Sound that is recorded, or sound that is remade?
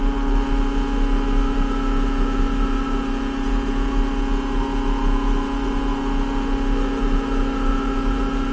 recorded